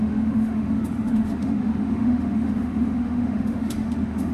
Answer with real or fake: fake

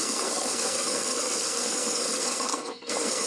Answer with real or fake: fake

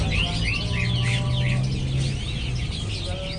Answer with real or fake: real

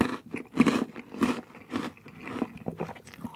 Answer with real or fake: real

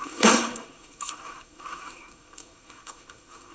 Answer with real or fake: fake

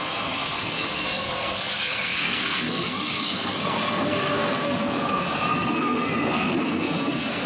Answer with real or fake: fake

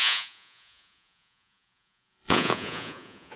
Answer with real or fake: fake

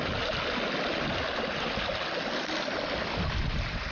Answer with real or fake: real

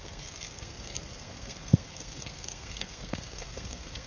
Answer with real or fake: fake